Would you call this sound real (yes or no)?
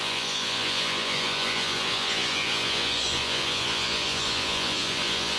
no